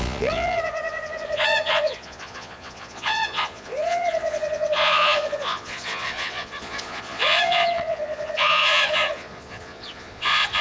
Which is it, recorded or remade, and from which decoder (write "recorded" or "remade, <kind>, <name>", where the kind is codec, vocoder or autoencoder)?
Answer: remade, vocoder, Vocos